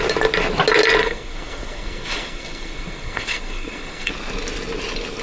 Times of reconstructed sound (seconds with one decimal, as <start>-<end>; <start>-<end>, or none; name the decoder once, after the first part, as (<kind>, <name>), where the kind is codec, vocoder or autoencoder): 1.0-4.1 (codec, SNAC)